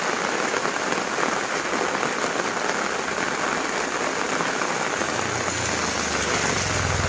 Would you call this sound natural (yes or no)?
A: yes